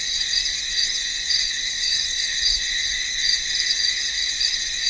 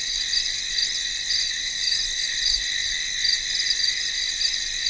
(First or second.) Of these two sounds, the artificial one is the first